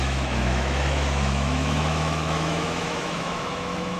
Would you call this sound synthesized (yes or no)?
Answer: yes